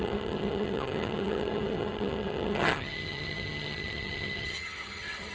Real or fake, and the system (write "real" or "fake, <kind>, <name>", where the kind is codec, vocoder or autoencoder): fake, vocoder, HiFi-GAN